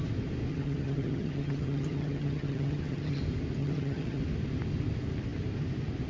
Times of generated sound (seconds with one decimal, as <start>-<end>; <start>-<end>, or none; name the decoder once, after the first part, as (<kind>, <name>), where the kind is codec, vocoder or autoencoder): 0.5-3.2 (vocoder, HiFi-GAN); 3.6-4.2